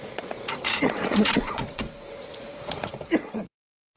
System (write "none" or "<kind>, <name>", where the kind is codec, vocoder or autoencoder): vocoder, Vocos